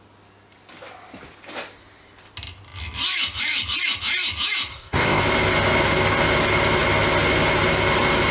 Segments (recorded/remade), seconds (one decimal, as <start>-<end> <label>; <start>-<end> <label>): 0.0-4.7 recorded; 4.7-5.2 remade; 5.2-8.3 recorded